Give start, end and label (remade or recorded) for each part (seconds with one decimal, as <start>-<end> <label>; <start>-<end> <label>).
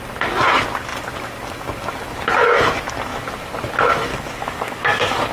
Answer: 0.0-4.1 recorded; 4.1-5.3 remade